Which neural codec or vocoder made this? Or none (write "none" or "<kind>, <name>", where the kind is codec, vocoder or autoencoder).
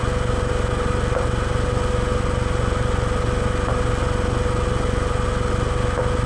none